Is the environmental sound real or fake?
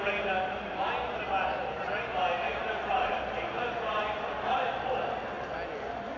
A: real